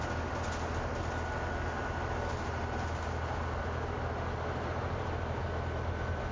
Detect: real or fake real